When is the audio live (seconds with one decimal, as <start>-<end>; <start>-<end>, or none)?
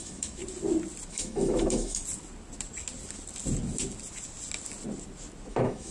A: 0.4-1.1; 2.0-5.5